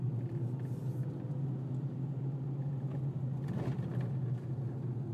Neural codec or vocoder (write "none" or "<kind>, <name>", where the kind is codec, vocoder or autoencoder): none